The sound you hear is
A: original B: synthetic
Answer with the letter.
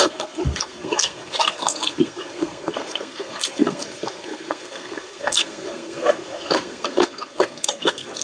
B